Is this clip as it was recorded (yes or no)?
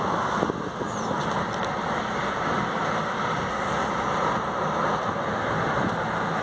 yes